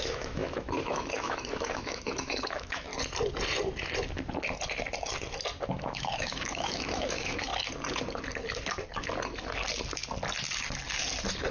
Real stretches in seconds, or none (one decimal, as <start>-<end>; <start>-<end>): 2.9-5.7; 7.5-11.5